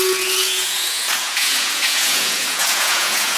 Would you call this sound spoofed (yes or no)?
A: yes